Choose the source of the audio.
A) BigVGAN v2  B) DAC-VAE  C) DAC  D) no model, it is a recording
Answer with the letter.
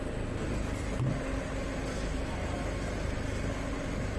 D